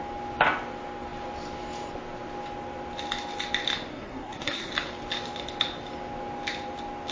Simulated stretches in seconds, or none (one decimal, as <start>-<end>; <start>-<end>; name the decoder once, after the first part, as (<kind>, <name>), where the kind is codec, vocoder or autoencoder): 3.9-4.7 (codec, SNAC)